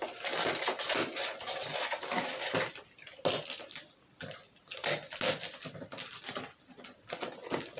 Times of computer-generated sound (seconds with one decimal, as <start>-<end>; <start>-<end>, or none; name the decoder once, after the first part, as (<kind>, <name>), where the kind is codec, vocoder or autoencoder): none